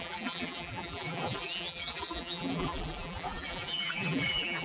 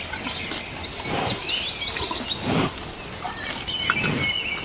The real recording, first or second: second